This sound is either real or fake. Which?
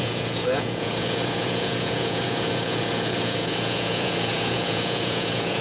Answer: fake